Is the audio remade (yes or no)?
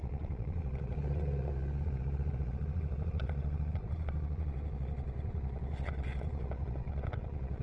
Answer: yes